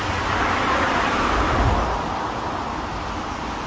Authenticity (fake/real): real